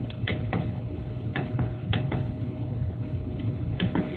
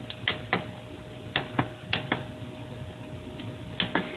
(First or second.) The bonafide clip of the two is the second